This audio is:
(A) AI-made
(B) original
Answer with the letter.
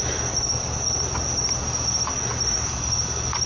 B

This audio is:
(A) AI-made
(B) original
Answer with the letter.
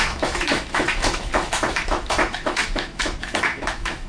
A